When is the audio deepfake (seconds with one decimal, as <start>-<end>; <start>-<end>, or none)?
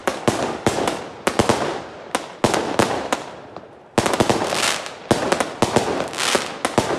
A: 0.0-1.0